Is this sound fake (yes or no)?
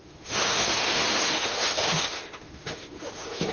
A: yes